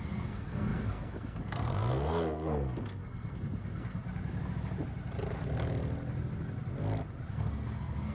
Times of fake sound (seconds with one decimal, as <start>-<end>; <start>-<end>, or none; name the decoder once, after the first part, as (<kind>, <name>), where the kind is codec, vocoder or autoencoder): 0.0-4.0 (codec, SNAC); 7.3-8.1